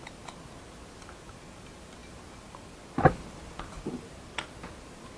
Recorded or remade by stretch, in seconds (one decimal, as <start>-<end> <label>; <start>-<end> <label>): 0.0-5.2 recorded